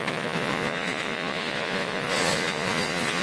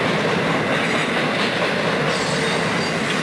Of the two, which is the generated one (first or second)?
first